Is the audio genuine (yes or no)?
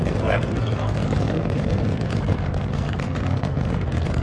no